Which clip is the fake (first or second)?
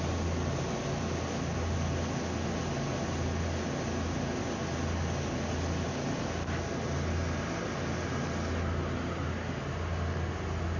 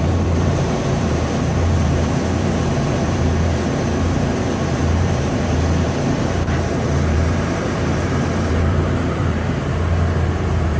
second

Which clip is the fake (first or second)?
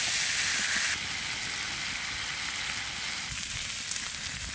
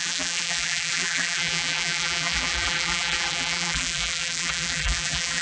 second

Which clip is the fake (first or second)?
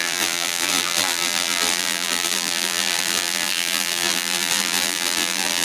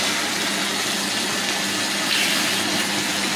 first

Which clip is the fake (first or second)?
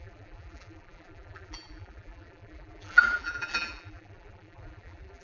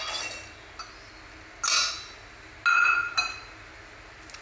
first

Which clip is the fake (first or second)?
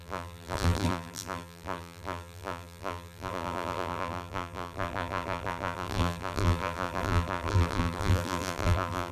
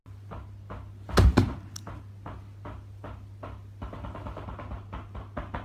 first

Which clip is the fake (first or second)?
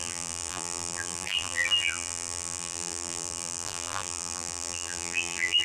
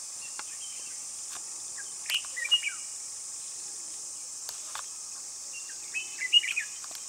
first